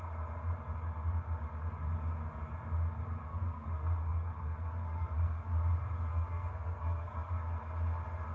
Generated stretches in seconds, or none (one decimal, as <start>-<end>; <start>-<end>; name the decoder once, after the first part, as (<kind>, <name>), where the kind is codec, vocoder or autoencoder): 3.3-5.5 (codec, SNAC); 6.1-7.3